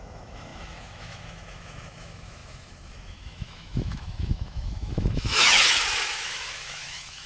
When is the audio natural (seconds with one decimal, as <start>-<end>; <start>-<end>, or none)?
none